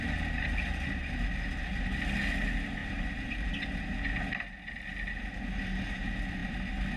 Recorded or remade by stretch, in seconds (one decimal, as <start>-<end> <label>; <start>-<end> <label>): 0.0-2.8 recorded; 2.8-3.5 remade; 3.5-7.0 recorded